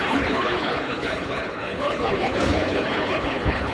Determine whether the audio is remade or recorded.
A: remade